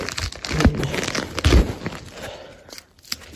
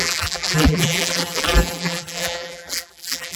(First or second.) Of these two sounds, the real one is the first